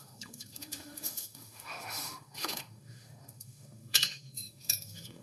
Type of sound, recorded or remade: remade